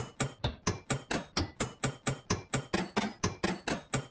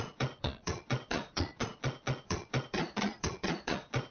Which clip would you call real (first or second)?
first